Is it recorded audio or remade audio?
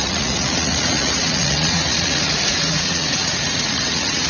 remade